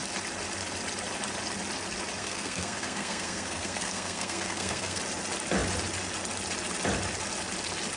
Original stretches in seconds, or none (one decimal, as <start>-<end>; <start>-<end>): 0.0-2.2; 5.0-8.0

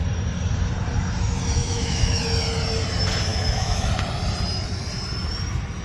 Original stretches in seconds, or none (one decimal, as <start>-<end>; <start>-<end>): 0.0-1.6; 2.2-3.3; 3.9-5.8

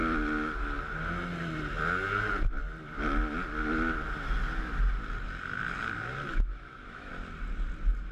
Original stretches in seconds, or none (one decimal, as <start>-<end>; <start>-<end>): 0.0-6.3; 7.1-8.1

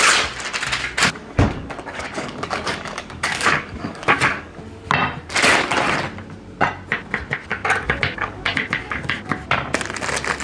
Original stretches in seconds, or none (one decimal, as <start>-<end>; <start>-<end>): 0.0-1.2; 4.6-7.5; 9.2-10.4

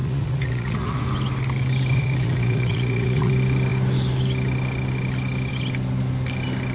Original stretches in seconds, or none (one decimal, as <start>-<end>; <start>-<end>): 1.0-1.9; 3.3-6.7

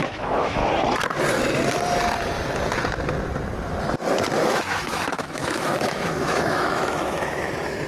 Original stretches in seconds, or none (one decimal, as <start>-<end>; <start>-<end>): 0.6-4.4